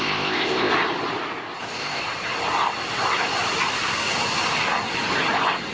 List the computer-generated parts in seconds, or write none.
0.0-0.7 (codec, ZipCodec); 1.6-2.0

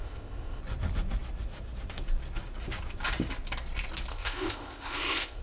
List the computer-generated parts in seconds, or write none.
0.0-0.6 (codec, ZipCodec); 4.1-5.4

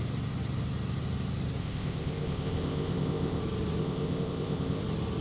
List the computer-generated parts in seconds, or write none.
1.6-3.4 (codec, ZipCodec); 3.8-4.8

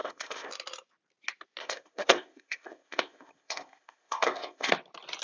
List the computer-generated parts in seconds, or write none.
0.0-0.5 (codec, ZipCodec); 1.6-4.7

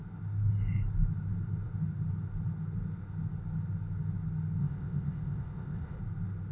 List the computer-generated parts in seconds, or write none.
4.6-6.0 (codec, ZipCodec)

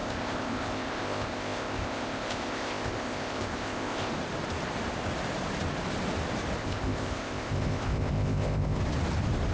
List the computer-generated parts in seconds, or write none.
0.0-4.1 (codec, ZipCodec); 6.6-8.8